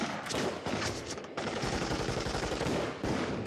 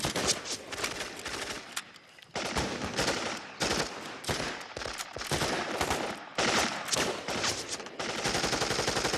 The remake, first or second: first